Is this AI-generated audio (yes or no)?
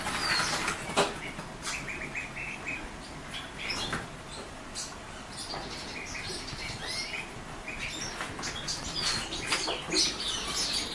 no